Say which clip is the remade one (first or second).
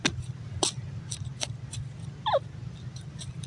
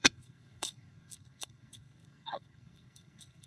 second